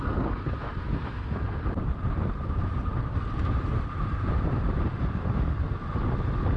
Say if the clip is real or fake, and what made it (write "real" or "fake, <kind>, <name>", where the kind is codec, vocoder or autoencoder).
real